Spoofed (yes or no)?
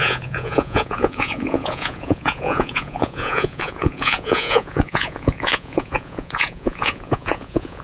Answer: yes